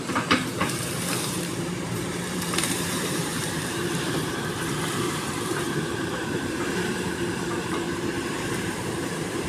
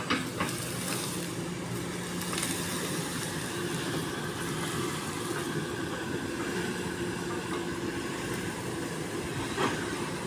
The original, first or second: second